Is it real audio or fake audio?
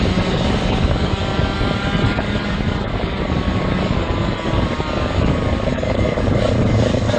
fake